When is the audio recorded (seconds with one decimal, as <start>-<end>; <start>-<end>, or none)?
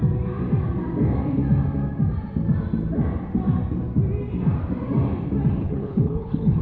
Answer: 0.0-5.6